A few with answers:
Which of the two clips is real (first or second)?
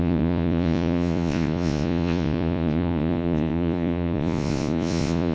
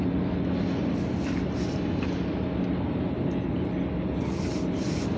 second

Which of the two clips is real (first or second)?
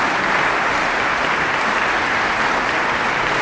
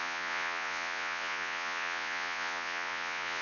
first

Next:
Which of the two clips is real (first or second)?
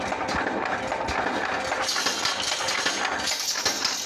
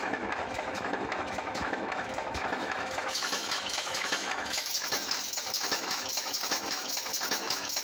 first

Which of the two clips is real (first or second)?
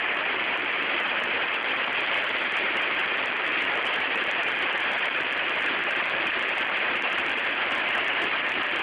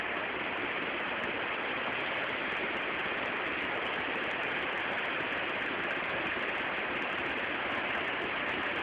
second